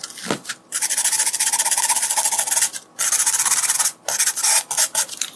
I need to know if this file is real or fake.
real